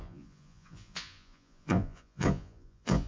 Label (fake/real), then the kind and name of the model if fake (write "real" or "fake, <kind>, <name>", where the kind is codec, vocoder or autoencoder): fake, vocoder, Vocos